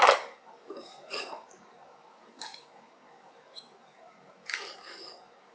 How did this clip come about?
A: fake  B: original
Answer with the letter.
A